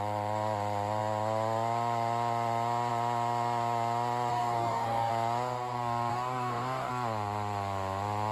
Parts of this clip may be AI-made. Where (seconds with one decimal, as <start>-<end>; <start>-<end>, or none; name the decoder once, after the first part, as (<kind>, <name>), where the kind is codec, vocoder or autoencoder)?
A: 4.3-5.1 (codec, DAC); 6.1-6.9